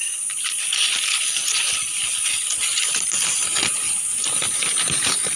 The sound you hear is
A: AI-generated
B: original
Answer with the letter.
B